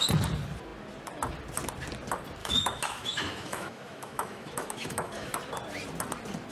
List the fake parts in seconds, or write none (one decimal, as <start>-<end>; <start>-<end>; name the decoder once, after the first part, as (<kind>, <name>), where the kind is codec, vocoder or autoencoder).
2.4-5.3 (autoencoder, DAC-VAE)